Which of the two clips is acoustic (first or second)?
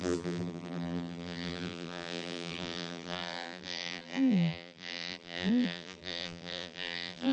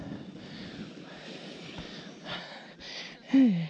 second